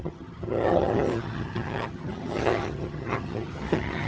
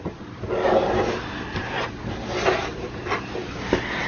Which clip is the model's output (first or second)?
first